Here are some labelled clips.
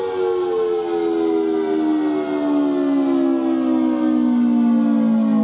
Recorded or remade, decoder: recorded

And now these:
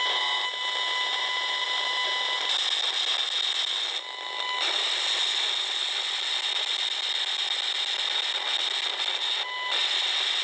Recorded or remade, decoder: recorded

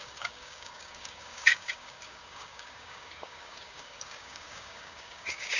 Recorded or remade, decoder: remade, codec, DAC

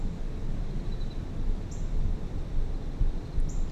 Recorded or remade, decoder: recorded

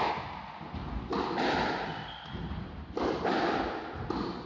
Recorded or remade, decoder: recorded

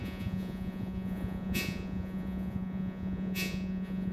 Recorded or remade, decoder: remade, vocoder, Vocos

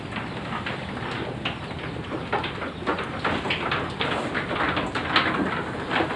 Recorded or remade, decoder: recorded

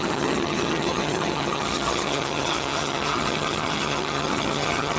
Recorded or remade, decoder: remade, vocoder, HiFi-GAN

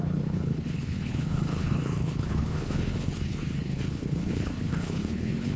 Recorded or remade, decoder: remade, codec, HILCodec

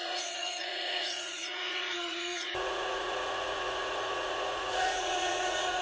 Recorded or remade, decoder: remade, vocoder, Vocos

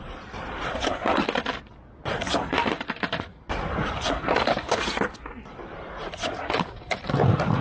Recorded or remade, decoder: recorded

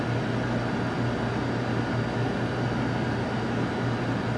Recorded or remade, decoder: recorded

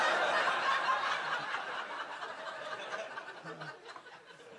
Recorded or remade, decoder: remade, vocoder, BigVGAN v2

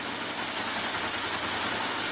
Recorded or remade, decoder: recorded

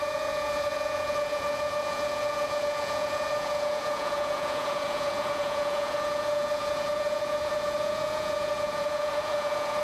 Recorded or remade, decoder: remade, vocoder, Vocos